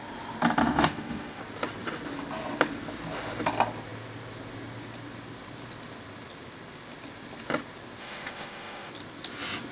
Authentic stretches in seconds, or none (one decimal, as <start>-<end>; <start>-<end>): 0.0-0.6; 1.4-8.0; 8.9-9.7